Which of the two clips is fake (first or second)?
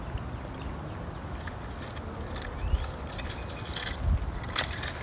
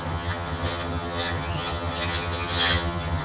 second